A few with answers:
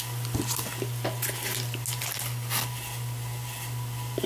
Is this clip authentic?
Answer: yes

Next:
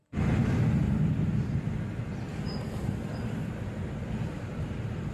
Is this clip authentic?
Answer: yes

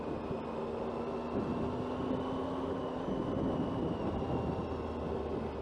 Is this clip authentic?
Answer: yes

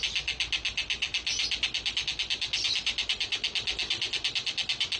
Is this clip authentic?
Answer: yes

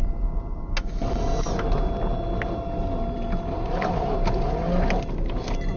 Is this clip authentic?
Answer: yes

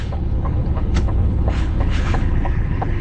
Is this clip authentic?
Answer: no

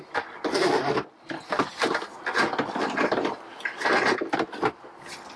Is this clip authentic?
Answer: yes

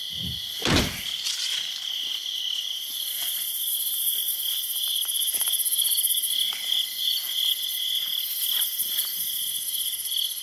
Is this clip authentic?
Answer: yes